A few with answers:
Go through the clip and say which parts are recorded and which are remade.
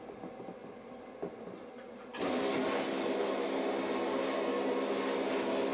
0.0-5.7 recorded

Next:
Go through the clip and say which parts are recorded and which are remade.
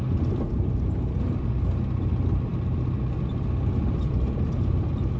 0.0-5.2 recorded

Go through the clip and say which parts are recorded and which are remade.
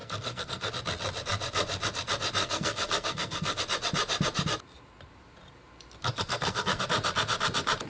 0.0-0.7 remade; 0.7-2.4 recorded; 2.4-3.6 remade; 3.6-6.3 recorded; 6.3-6.8 remade; 6.8-7.9 recorded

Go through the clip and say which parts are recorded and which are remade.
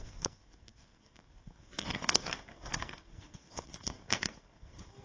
0.0-5.0 remade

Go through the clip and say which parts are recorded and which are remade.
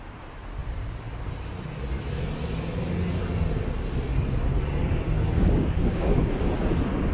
0.0-4.8 recorded; 4.8-6.5 remade; 6.5-7.1 recorded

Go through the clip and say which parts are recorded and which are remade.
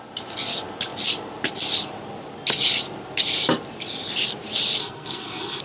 0.0-4.8 recorded; 4.8-5.6 remade